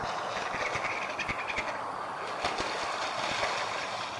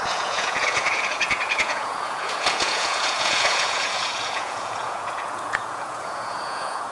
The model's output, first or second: second